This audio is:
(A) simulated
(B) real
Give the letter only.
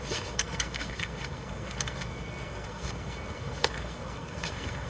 A